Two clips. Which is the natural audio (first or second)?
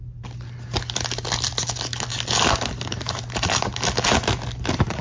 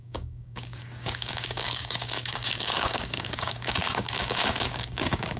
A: first